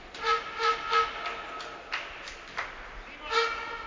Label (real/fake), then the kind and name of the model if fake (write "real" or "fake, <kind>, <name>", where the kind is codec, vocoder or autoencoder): real